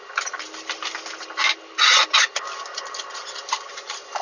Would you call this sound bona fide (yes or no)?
yes